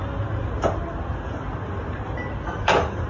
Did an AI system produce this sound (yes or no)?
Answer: no